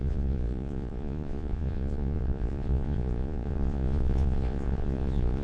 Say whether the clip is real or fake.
fake